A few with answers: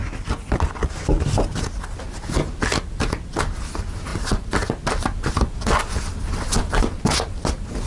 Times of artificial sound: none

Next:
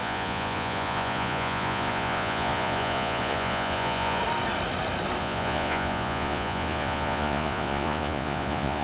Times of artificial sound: 0.0-4.2 (vocoder, Vocos); 5.2-8.8

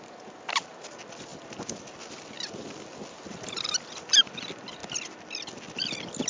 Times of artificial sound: none

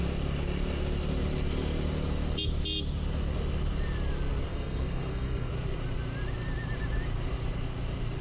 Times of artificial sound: 4.5-5.5 (codec, SNAC)

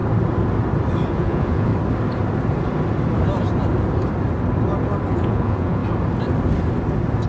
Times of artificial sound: 1.1-1.7 (vocoder, Vocos); 5.1-5.8